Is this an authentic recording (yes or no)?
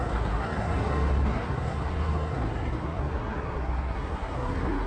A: no